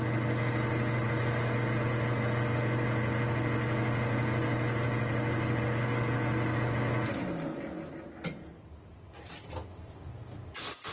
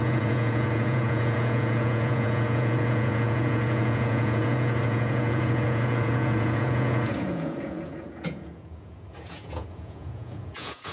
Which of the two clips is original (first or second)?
first